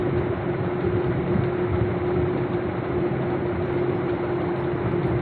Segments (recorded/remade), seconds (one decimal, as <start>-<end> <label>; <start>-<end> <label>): 0.0-5.2 recorded